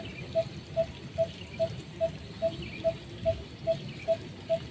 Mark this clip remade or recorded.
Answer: recorded